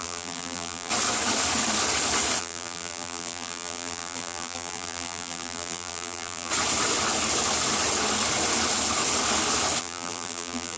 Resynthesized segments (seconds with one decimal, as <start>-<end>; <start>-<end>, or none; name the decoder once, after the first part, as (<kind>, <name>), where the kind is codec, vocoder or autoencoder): 0.0-0.9 (vocoder, BigVGAN v2); 2.4-6.5; 9.8-10.8